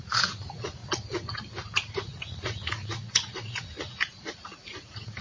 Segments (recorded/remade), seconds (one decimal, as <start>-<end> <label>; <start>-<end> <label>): 0.0-0.8 remade; 0.8-1.7 recorded; 1.7-5.2 remade